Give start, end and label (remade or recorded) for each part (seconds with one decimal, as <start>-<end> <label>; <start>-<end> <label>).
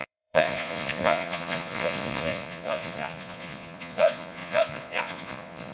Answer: 0.0-5.7 remade